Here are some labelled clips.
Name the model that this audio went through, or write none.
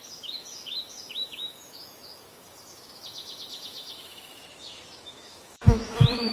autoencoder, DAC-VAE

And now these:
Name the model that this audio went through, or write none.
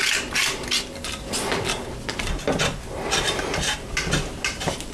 none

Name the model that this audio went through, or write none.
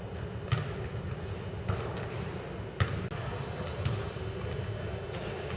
none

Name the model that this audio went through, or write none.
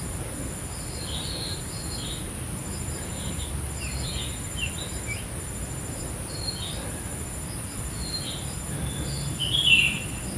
none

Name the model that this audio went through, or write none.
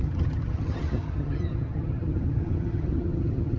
vocoder, HiFi-GAN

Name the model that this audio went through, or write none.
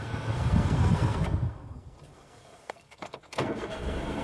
codec, SNAC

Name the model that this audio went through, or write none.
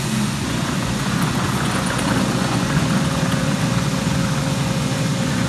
vocoder, Vocos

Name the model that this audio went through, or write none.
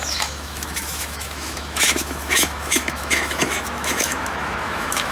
autoencoder, DAC-VAE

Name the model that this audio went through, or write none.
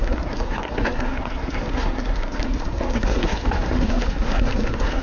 codec, SNAC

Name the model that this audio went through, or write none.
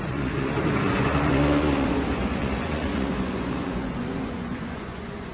vocoder, Vocos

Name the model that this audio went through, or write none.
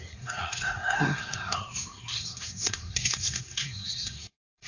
codec, SNAC